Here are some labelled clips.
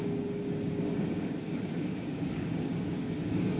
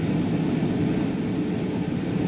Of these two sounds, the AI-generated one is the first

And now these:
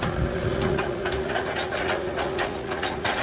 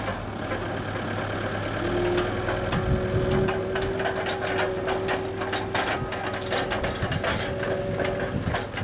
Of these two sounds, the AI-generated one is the first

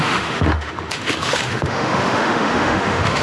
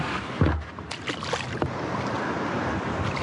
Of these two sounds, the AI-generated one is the first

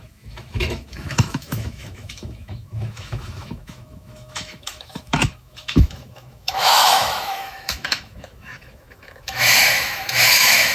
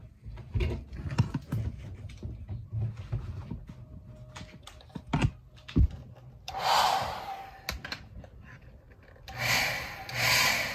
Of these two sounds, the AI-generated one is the first